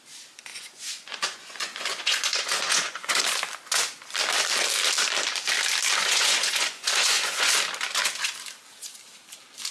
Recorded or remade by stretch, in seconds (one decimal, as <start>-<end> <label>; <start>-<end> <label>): 0.0-0.5 recorded; 0.5-3.2 remade; 3.2-6.0 recorded; 6.0-7.5 remade; 7.5-9.7 recorded